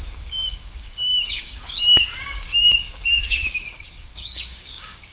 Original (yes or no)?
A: no